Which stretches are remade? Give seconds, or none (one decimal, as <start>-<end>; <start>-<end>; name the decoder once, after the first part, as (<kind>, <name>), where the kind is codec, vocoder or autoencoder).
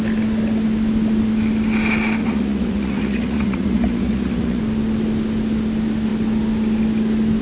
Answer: 2.2-4.6 (vocoder, Vocos)